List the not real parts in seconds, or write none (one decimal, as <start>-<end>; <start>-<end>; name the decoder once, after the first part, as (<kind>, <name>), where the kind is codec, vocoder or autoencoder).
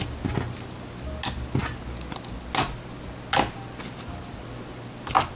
none